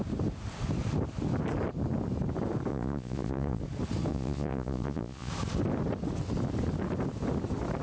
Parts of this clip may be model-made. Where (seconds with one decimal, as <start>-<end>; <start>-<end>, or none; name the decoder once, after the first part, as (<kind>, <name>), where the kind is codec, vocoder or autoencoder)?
2.7-3.6 (vocoder, Vocos); 4.1-5.3